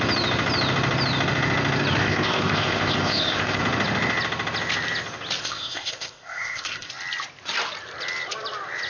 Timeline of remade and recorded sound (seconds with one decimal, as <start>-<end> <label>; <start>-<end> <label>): 0.0-2.0 recorded; 2.0-3.6 remade; 3.6-5.4 recorded; 5.4-6.9 remade; 6.9-8.9 recorded